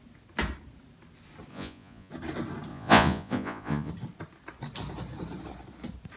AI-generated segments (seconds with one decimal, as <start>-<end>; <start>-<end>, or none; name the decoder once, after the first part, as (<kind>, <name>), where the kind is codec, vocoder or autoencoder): 1.5-2.1 (vocoder, Vocos); 2.7-3.9